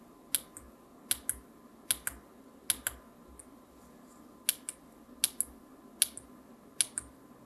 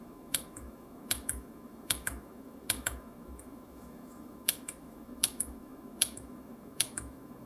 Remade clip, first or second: second